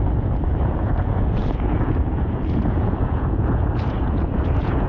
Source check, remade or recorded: remade